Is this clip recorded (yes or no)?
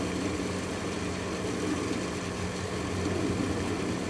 yes